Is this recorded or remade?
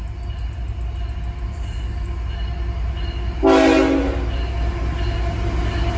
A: recorded